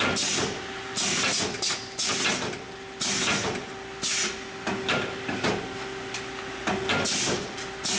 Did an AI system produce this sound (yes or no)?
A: no